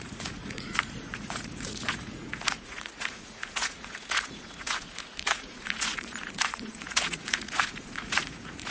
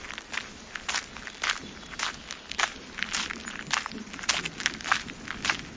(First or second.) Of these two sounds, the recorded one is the second